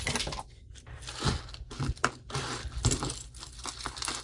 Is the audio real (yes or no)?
yes